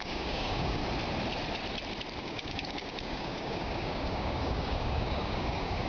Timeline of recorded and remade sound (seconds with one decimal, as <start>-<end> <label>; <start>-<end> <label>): 0.0-0.8 remade; 0.8-2.2 recorded; 2.2-5.9 remade